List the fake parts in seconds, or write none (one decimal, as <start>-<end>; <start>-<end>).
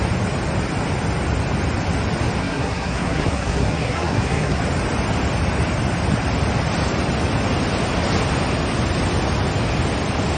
2.4-4.6